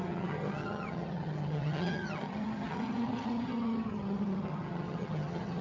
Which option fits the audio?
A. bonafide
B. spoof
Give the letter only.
B